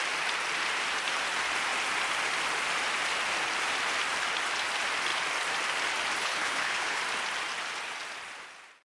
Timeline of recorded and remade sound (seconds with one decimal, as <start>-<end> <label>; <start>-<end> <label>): 0.0-6.2 recorded; 6.2-7.0 remade; 7.0-8.8 recorded